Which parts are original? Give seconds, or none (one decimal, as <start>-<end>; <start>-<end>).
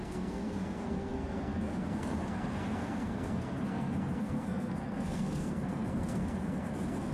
none